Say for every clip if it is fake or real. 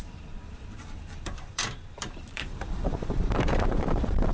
fake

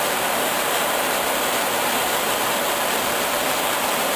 fake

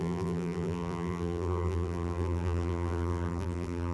fake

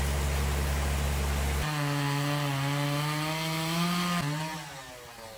real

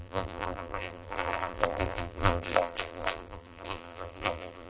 fake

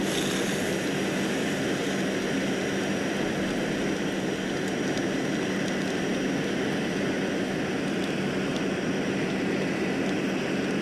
real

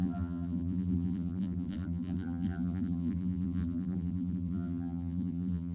fake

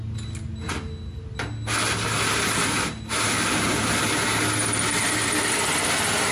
real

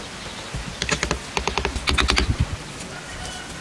real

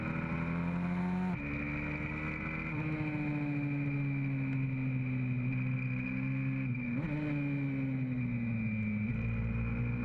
real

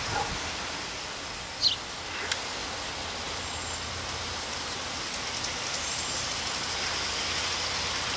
real